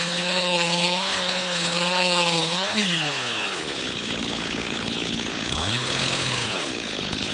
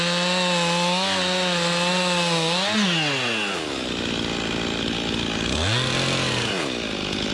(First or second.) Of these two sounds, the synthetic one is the first